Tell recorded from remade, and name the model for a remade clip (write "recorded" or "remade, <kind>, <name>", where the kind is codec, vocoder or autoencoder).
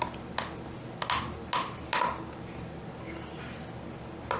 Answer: recorded